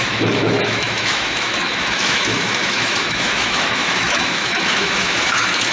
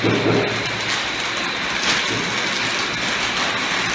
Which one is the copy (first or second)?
first